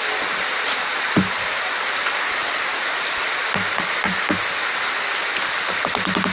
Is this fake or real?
real